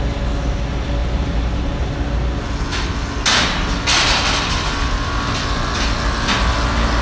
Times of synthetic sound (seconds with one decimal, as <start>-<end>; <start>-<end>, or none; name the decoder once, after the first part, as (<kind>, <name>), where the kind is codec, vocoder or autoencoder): 1.0-1.9 (vocoder, BigVGAN v2)